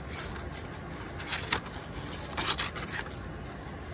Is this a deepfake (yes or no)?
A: no